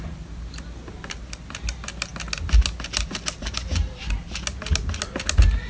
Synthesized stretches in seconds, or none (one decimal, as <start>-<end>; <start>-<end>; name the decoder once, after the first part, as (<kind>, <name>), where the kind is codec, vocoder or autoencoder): none